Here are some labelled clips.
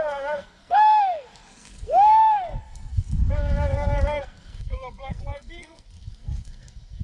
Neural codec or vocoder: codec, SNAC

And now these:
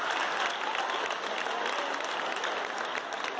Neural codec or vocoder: none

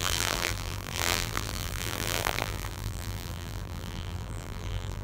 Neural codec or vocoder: vocoder, BigVGAN v2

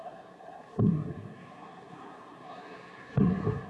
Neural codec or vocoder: codec, SNAC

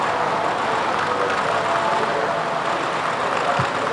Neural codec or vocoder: none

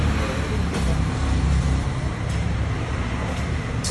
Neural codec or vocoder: vocoder, BigVGAN v2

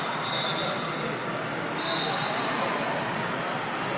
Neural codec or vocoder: none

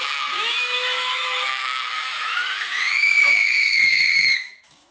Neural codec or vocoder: autoencoder, DAC-VAE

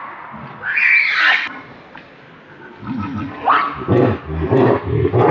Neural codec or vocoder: none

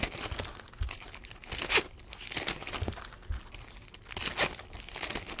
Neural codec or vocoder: none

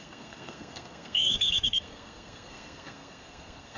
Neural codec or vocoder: codec, SNAC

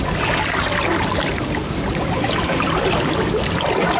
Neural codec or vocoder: none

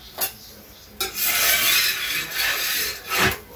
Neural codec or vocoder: none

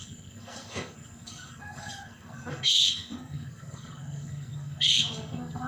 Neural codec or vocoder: codec, SNAC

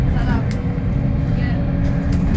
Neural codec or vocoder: none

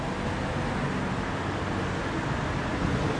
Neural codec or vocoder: none